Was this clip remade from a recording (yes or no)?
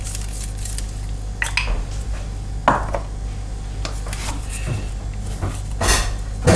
no